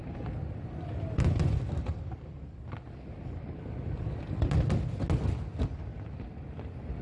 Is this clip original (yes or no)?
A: yes